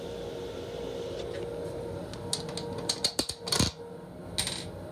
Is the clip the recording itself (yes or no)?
yes